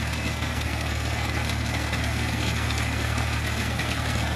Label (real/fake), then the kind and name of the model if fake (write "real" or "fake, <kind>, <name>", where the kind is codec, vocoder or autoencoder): fake, codec, SNAC